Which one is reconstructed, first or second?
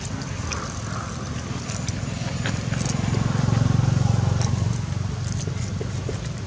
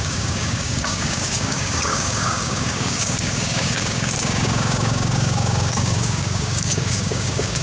second